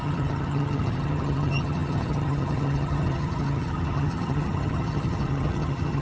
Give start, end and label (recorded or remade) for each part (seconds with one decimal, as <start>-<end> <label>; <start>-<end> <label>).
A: 0.0-6.0 remade